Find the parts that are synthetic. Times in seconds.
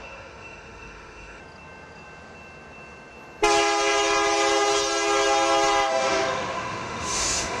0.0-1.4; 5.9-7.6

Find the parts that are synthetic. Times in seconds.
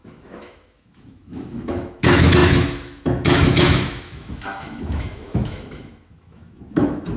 0.0-7.2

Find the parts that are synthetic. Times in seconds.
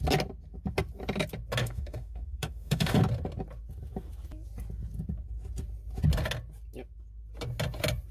1.6-3.0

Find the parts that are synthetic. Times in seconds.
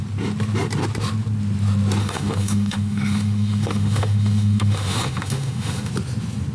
2.0-5.9